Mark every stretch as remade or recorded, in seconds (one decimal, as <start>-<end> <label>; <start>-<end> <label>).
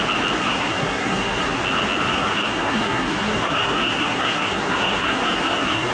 0.0-0.4 recorded; 0.4-1.6 remade; 1.6-2.1 recorded; 2.1-5.9 remade